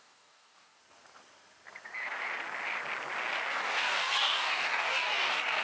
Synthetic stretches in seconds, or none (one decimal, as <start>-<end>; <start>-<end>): 0.0-0.8; 3.5-5.6